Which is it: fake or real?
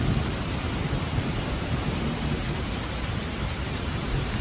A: real